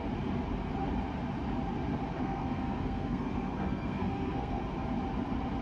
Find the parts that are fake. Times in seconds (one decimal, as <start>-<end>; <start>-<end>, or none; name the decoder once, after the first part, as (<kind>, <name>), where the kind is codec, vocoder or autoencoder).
2.2-4.6 (codec, SNAC)